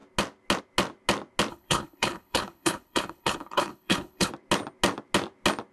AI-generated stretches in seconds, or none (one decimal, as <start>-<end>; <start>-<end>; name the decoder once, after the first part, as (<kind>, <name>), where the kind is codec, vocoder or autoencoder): 1.5-4.3 (codec, HILCodec)